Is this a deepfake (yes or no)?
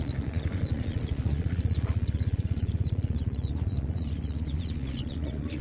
yes